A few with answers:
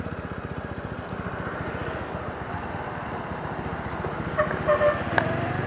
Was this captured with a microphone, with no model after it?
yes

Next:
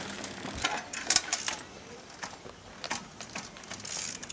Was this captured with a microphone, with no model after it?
yes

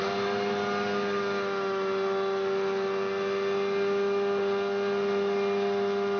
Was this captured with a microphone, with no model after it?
yes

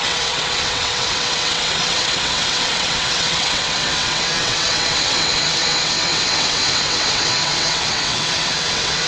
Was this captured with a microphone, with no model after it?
no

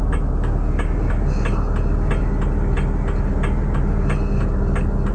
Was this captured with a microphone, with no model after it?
yes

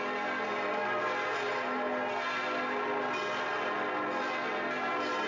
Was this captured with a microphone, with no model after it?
yes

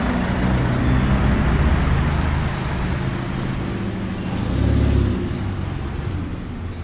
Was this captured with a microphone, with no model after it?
yes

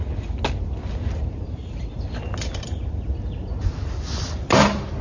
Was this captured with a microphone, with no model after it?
yes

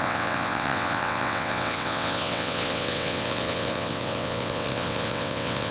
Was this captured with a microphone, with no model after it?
no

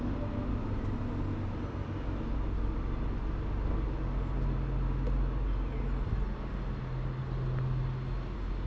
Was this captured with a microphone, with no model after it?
yes